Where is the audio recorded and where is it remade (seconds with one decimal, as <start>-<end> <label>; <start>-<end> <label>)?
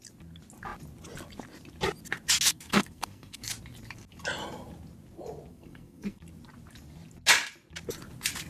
0.0-2.5 recorded; 2.5-3.5 remade; 3.5-5.5 recorded; 5.5-6.2 remade; 6.2-8.5 recorded